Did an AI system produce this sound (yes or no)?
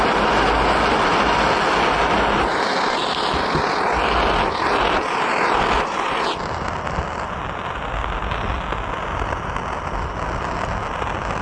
no